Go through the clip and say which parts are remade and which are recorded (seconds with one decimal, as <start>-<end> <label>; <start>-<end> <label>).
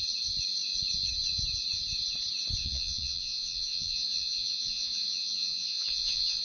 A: 0.0-2.6 recorded; 2.6-6.4 remade